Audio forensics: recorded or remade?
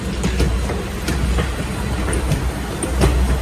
remade